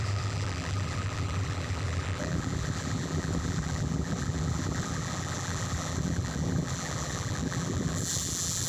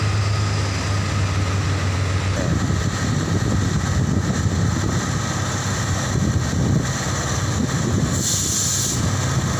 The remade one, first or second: first